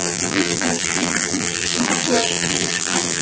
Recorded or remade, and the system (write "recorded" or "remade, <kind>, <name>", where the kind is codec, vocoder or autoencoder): remade, vocoder, BigVGAN v2